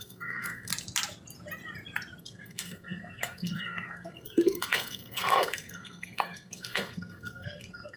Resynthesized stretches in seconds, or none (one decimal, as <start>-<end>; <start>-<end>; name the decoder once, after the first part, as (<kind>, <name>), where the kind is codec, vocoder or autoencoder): 0.0-0.7 (codec, SNAC); 2.2-8.0